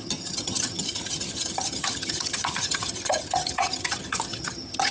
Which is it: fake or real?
fake